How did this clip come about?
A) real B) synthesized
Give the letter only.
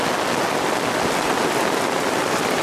A